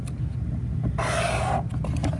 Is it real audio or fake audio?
real